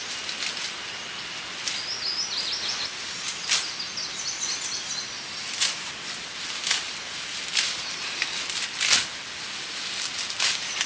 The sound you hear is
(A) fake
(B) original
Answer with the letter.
B